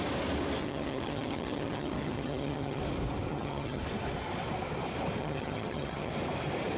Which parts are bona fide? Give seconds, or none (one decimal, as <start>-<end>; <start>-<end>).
0.0-0.6; 2.8-3.3; 3.8-5.2; 6.1-6.8